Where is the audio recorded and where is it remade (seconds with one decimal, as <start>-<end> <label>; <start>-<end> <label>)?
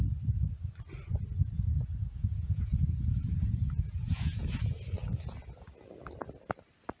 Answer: 0.0-1.4 recorded; 1.4-4.6 remade; 4.6-7.0 recorded